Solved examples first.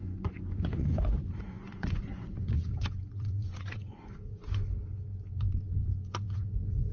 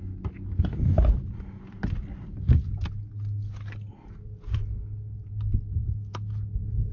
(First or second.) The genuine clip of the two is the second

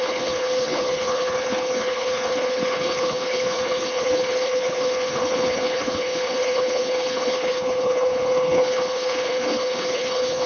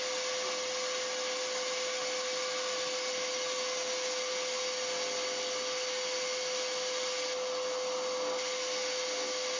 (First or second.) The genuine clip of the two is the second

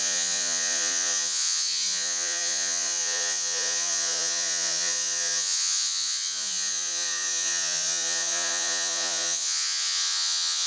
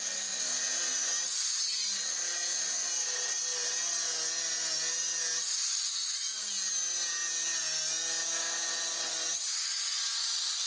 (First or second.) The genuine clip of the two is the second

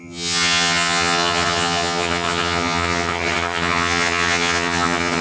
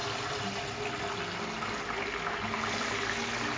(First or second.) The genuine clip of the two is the second